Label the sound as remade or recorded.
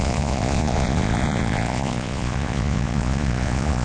remade